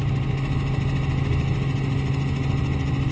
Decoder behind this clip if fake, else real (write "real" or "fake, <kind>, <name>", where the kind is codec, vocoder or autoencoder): real